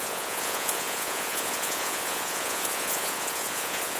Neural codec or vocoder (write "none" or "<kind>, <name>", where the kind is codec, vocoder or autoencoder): vocoder, Vocos